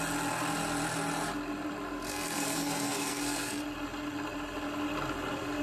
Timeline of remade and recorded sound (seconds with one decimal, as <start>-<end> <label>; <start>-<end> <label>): 0.0-2.1 recorded; 2.1-3.6 remade; 3.6-5.6 recorded